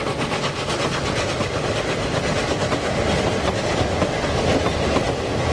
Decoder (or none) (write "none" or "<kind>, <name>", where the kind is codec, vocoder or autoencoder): none